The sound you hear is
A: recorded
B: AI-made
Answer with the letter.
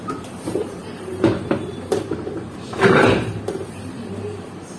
B